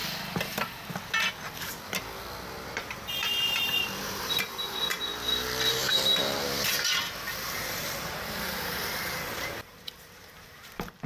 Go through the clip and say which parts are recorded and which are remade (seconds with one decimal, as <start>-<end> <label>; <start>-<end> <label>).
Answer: 0.0-2.7 recorded; 2.7-5.1 remade; 5.1-5.7 recorded; 5.7-11.1 remade

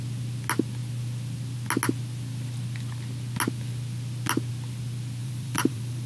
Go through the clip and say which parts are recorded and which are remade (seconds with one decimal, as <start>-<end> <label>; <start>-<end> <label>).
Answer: 0.0-5.2 recorded; 5.2-6.1 remade

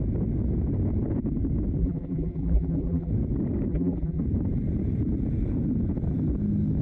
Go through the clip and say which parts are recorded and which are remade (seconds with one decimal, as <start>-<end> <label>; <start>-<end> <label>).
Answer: 0.0-1.8 recorded; 1.8-3.1 remade; 3.1-3.7 recorded; 3.7-4.2 remade; 4.2-6.8 recorded

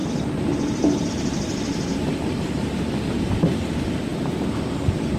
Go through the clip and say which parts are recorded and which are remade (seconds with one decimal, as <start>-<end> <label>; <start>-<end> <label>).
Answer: 0.0-1.1 recorded; 1.1-4.1 remade; 4.1-4.6 recorded; 4.6-5.2 remade

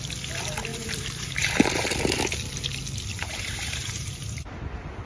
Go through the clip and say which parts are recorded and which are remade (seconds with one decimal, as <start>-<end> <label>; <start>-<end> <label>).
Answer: 0.0-0.7 recorded; 0.7-2.0 remade; 2.0-3.1 recorded; 3.1-4.6 remade; 4.6-5.1 recorded

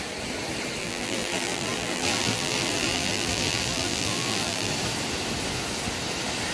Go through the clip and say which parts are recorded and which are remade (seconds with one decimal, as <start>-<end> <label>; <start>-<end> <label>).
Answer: 0.0-0.8 recorded; 0.8-4.7 remade; 4.7-6.5 recorded

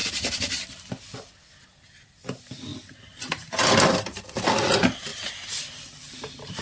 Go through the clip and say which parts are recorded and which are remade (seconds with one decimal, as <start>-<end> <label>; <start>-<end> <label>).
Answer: 0.0-0.9 remade; 0.9-6.6 recorded

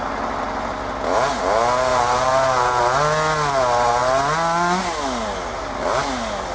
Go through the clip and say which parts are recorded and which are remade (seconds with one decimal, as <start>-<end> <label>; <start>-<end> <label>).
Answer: 0.0-1.9 recorded; 1.9-2.8 remade; 2.8-6.5 recorded